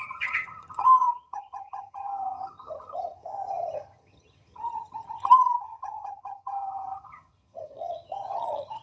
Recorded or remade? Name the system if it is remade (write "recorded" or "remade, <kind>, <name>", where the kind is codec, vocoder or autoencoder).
remade, vocoder, HiFi-GAN